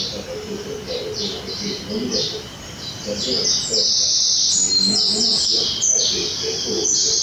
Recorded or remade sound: recorded